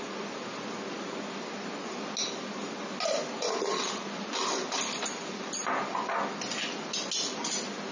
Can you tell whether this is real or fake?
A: real